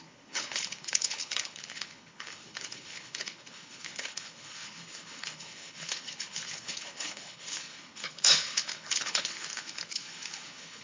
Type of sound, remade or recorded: remade